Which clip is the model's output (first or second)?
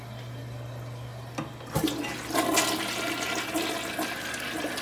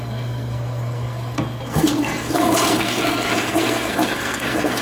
second